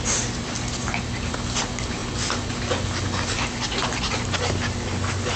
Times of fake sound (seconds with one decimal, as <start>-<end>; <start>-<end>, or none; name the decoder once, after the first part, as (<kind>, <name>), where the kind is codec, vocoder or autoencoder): none